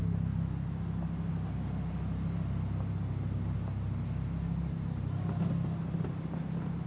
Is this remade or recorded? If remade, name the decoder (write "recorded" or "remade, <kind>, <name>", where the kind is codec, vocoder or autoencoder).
recorded